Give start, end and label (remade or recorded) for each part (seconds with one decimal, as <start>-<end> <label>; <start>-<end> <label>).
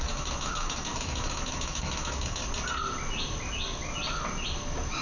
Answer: 0.0-2.4 remade; 2.4-5.0 recorded